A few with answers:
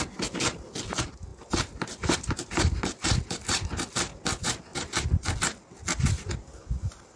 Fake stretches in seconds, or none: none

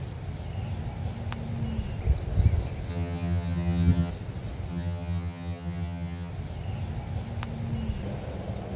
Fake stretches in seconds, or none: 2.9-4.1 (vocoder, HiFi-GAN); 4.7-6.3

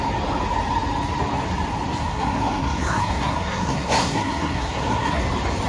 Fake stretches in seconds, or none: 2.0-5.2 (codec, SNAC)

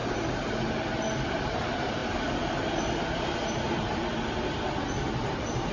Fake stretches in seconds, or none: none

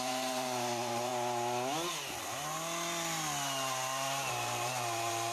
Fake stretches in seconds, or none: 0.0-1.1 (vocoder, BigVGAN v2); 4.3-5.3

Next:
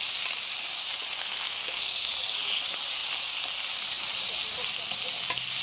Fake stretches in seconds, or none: 1.2-2.1 (codec, SNAC)

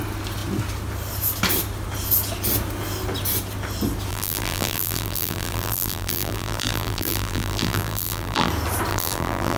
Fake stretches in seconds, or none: 4.1-8.5 (vocoder, BigVGAN v2); 8.9-9.6

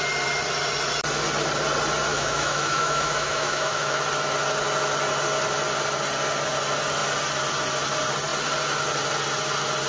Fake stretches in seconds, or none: 2.1-4.0 (autoencoder, DAC-VAE)